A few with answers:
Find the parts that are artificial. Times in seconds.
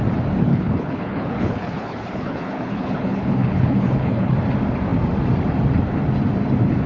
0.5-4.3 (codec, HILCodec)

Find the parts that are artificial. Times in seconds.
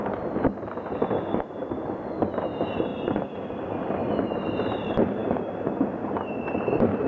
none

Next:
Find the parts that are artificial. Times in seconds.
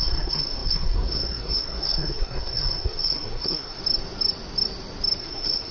0.0-3.8 (codec, SNAC); 5.2-5.7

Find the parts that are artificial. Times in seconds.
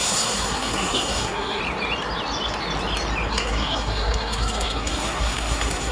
0.0-1.6 (codec, SNAC); 3.3-5.9